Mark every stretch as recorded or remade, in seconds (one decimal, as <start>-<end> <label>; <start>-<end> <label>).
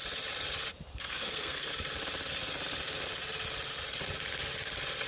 0.0-0.9 recorded; 0.9-1.7 remade; 1.7-5.1 recorded